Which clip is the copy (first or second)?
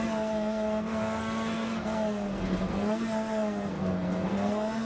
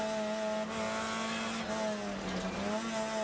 first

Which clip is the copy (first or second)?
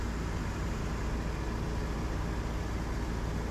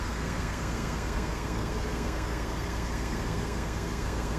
second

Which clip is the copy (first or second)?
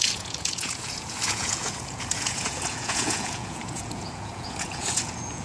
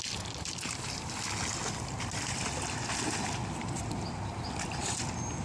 first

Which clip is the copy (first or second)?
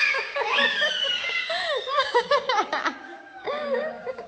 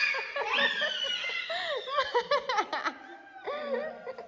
first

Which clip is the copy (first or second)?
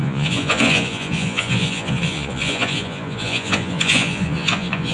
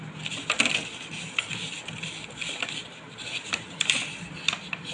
first